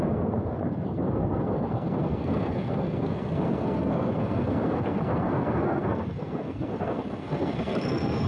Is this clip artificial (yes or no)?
yes